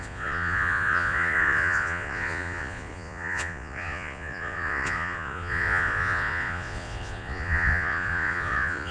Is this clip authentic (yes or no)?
no